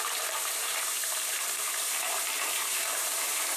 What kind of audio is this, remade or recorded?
remade